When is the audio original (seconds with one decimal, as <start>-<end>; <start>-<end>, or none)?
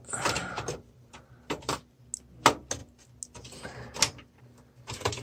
0.0-0.4; 1.3-5.2